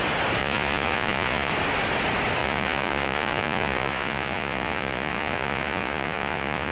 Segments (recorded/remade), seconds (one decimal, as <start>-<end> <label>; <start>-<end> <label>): 0.0-0.4 recorded; 0.4-1.5 remade; 1.5-2.4 recorded; 2.4-6.7 remade